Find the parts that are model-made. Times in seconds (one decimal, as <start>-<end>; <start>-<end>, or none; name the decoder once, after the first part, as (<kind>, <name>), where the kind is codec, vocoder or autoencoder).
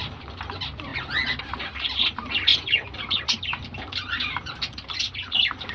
0.0-0.9 (vocoder, BigVGAN v2); 1.4-5.7